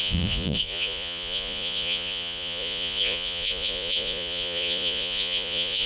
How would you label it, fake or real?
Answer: fake